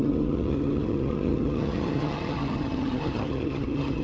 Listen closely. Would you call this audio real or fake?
fake